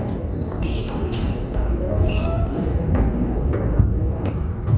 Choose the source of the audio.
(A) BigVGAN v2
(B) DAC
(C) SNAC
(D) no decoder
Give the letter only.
B